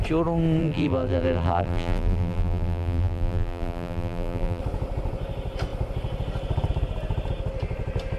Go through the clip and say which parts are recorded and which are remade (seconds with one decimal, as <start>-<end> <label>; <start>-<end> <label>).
0.0-0.6 recorded; 0.6-4.6 remade; 4.6-8.2 recorded